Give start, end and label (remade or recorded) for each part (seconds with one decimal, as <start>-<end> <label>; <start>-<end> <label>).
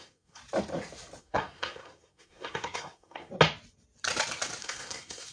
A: 0.0-0.4 remade; 0.4-1.2 recorded; 1.2-3.3 remade; 3.3-4.6 recorded; 4.6-5.3 remade